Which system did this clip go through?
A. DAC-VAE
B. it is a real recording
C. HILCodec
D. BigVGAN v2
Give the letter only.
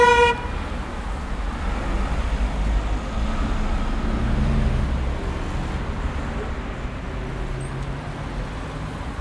B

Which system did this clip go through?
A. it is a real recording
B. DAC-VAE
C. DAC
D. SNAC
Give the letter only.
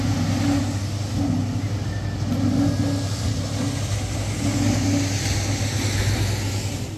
A